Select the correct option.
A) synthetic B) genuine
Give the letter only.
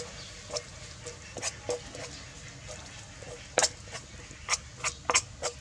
B